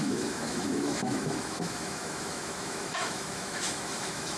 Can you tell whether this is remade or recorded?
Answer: remade